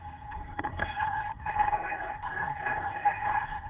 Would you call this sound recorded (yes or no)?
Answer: no